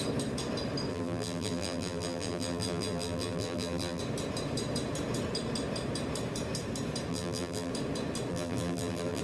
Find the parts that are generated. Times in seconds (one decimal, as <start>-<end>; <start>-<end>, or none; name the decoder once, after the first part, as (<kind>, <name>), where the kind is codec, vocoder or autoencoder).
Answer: 0.9-4.0 (vocoder, BigVGAN v2); 7.1-7.7; 8.3-9.2